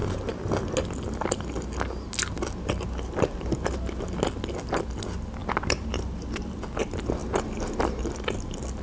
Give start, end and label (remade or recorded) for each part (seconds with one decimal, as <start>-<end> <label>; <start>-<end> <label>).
0.0-8.8 recorded